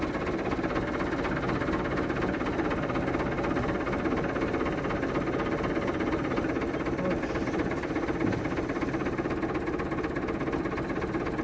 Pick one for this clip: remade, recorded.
recorded